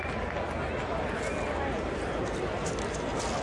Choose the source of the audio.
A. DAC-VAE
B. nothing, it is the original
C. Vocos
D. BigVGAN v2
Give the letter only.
B